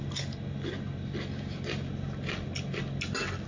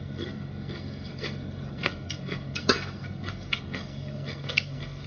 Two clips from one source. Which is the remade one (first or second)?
second